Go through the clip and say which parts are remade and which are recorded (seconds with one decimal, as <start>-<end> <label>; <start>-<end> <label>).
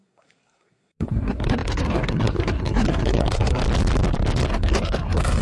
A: 0.0-3.6 remade; 3.6-4.5 recorded; 4.5-5.4 remade